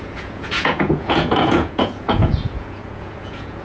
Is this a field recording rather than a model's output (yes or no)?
no